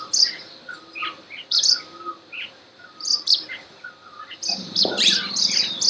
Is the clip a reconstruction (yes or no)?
yes